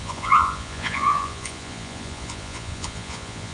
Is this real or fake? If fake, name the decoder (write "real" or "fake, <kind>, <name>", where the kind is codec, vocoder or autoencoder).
fake, vocoder, Vocos